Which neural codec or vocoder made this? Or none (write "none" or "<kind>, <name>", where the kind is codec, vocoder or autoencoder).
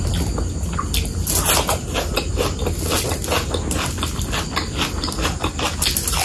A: none